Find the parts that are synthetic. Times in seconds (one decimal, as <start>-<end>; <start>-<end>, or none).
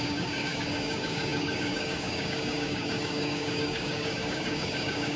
0.0-5.2